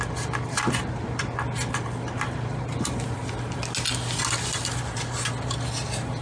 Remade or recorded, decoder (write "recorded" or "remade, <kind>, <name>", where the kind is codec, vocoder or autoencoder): recorded